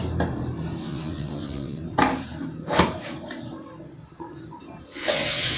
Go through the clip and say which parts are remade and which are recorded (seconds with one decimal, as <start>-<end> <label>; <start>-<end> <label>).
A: 0.0-0.8 recorded; 0.8-1.8 remade; 1.8-4.9 recorded; 4.9-5.6 remade